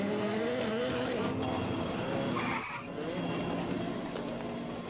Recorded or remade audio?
recorded